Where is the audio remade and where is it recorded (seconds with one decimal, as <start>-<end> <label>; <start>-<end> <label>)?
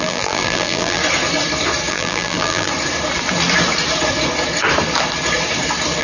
0.0-1.0 remade; 1.0-1.9 recorded; 1.9-2.7 remade; 2.7-6.0 recorded